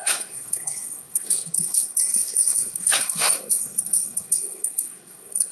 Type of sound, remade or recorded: remade